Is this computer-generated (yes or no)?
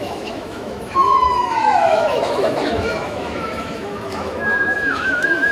yes